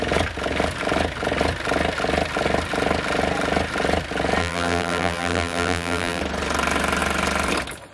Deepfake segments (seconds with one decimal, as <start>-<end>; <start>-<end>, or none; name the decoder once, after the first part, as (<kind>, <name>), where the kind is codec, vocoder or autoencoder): 4.4-6.2 (vocoder, BigVGAN v2)